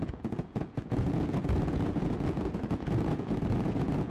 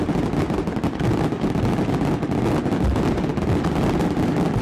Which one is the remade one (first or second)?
first